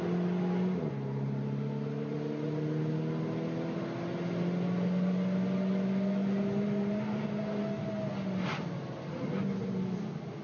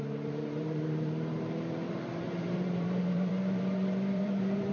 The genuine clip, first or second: first